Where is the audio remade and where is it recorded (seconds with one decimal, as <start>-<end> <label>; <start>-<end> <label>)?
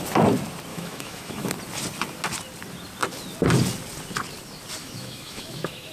0.0-0.7 recorded; 0.7-1.5 remade; 1.5-4.8 recorded; 4.8-5.9 remade